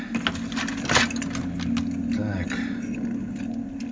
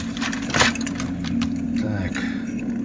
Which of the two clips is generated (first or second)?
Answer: second